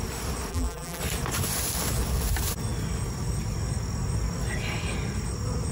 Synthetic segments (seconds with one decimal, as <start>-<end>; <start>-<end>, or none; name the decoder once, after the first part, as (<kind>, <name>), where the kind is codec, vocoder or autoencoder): 0.5-1.0 (vocoder, BigVGAN v2)